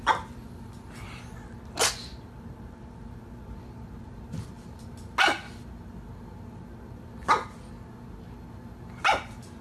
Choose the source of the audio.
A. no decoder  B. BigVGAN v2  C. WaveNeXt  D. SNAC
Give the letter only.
A